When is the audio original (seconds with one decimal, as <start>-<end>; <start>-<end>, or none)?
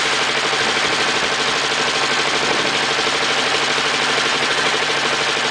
0.0-4.3; 4.9-5.5